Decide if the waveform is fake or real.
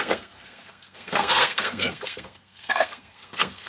fake